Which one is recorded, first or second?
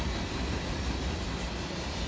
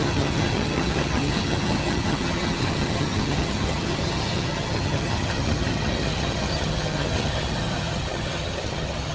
first